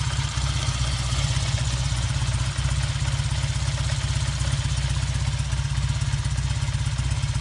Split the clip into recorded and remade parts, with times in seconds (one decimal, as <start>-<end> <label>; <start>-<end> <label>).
0.0-0.6 recorded; 0.6-2.5 remade; 2.5-7.4 recorded